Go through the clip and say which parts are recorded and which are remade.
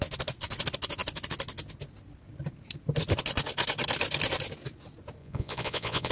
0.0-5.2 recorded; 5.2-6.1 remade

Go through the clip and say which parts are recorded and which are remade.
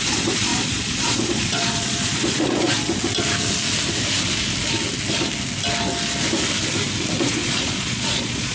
0.0-2.8 remade; 2.8-7.2 recorded; 7.2-8.5 remade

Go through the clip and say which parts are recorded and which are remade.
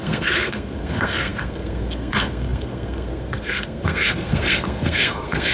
0.0-5.5 remade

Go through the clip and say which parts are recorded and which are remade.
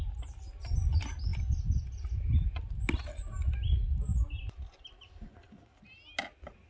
0.0-6.7 recorded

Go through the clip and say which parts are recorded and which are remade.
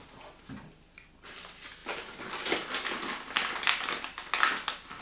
0.0-5.0 recorded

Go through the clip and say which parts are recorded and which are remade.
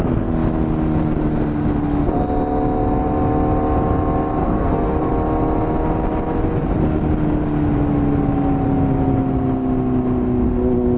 0.0-4.4 recorded; 4.4-5.1 remade; 5.1-11.0 recorded